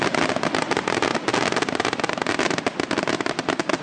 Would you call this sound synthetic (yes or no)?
no